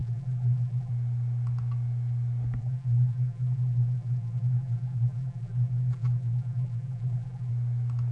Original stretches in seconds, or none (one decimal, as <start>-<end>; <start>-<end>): 0.9-2.6; 7.5-8.1